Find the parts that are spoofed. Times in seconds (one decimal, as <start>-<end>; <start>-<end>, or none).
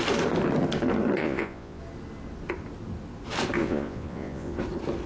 1.2-1.8; 3.6-4.6